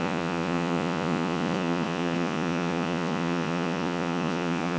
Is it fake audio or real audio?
fake